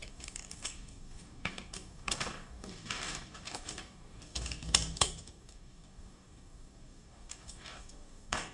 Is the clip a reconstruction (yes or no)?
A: yes